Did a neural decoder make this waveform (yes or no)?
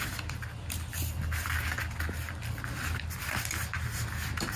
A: no